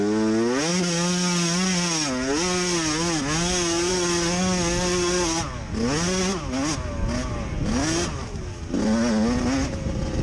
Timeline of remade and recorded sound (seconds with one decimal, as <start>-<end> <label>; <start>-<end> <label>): 0.0-10.2 recorded